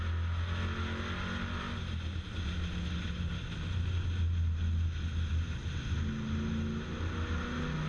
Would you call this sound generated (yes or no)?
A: no